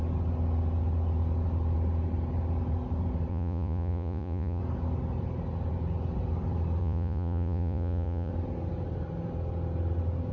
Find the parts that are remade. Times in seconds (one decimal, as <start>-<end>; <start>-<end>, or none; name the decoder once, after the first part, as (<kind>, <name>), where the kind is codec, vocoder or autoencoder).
3.3-4.6 (vocoder, Vocos); 6.8-8.3